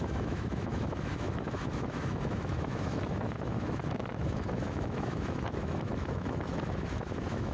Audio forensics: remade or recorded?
remade